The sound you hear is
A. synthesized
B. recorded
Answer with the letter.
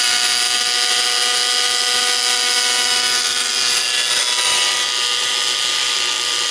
B